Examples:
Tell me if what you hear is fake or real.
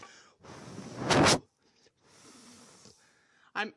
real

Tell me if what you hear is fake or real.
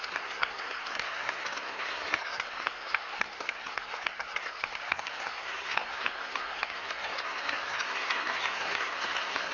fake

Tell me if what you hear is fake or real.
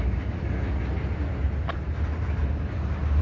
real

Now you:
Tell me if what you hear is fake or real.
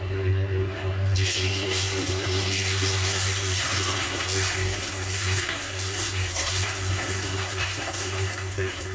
fake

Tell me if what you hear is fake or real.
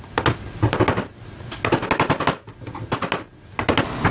real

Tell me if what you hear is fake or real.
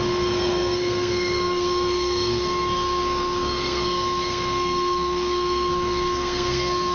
fake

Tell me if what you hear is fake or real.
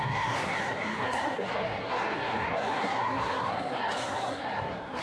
fake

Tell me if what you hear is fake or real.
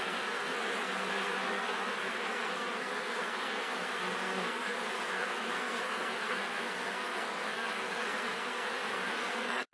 fake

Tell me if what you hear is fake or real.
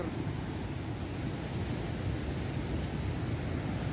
real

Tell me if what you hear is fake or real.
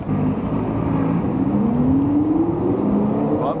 real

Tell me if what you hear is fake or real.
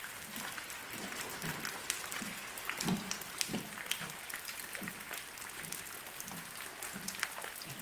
real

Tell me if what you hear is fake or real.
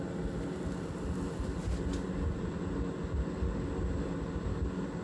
real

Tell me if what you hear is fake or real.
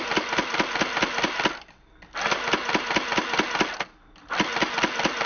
real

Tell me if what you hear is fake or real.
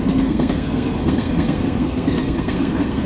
fake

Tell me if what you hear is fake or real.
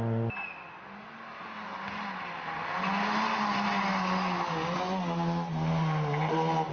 real